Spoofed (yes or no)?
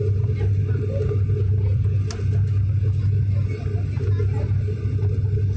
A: no